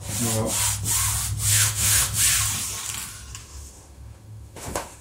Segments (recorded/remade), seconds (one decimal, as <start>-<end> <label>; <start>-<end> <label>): 0.0-1.5 recorded; 1.5-2.2 remade; 2.2-3.4 recorded; 3.4-5.0 remade